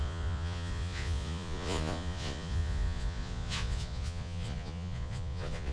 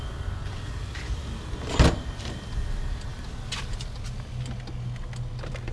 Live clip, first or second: second